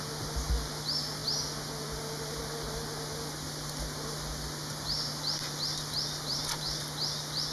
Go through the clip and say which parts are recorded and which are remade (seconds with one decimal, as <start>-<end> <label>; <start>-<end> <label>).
0.0-6.3 recorded; 6.3-6.8 remade; 6.8-7.5 recorded